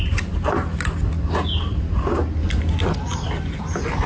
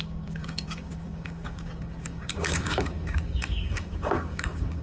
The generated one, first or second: second